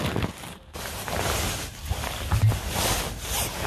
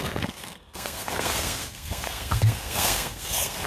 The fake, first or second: second